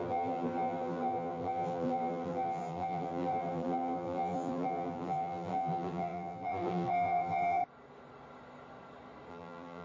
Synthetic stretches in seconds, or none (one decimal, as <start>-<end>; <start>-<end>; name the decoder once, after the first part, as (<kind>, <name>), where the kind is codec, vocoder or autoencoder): 0.0-7.6 (vocoder, BigVGAN v2); 9.3-9.8